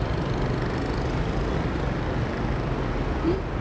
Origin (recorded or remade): recorded